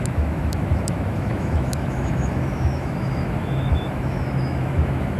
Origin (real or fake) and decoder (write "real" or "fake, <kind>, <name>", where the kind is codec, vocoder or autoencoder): fake, autoencoder, DAC-VAE